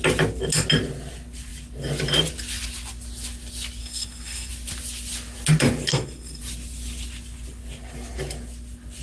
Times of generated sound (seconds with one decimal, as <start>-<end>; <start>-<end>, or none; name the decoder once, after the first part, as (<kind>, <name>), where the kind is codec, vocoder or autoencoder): 3.8-4.5 (codec, SNAC); 5.9-6.4